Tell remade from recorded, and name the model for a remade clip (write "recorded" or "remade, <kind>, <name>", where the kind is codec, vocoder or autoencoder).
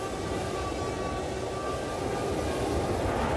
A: recorded